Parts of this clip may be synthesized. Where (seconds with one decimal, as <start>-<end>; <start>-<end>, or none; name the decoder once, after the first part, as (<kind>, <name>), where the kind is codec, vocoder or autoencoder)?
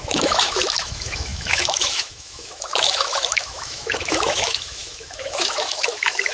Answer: 0.0-6.3 (autoencoder, DAC-VAE)